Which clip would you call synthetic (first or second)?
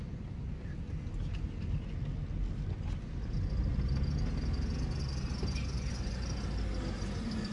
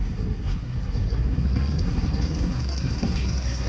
second